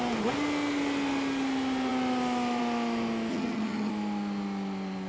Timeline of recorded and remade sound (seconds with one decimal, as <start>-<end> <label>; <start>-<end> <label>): 0.0-3.3 recorded; 3.3-3.9 remade; 3.9-5.1 recorded

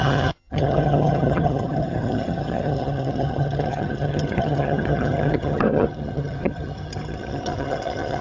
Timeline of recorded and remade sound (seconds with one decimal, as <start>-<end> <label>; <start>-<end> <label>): 0.0-8.2 remade